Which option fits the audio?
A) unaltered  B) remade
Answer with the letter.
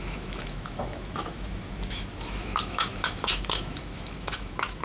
B